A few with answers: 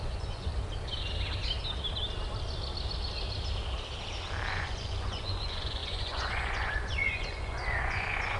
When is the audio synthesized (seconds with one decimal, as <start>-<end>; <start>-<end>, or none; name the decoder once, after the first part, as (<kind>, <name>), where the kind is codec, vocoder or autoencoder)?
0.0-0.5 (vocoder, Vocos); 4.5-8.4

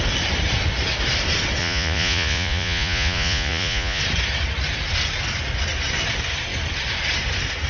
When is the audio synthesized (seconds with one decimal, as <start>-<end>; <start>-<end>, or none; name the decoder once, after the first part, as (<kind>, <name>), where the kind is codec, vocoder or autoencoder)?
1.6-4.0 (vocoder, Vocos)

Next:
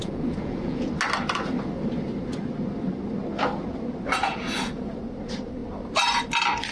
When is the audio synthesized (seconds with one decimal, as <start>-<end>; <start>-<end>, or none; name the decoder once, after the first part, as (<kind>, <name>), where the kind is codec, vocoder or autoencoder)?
0.0-0.9 (vocoder, Vocos); 4.2-5.0

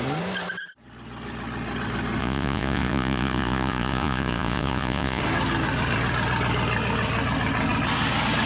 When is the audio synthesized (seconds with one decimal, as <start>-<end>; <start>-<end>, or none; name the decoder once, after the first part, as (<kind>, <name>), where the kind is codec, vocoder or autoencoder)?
2.2-5.2 (vocoder, Vocos)

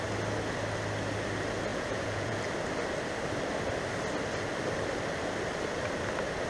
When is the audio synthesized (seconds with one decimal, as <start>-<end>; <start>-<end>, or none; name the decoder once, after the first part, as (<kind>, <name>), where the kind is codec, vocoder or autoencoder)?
1.7-2.4 (vocoder, Vocos)